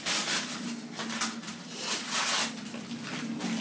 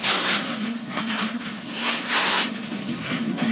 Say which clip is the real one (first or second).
first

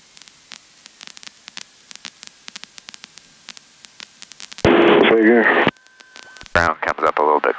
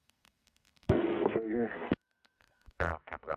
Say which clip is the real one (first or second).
first